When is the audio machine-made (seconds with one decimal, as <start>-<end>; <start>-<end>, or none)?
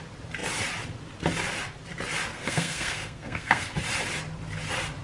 2.3-3.7